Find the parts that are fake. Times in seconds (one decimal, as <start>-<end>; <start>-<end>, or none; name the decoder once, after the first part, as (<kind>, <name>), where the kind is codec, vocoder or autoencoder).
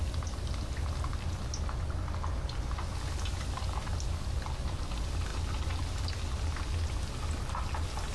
none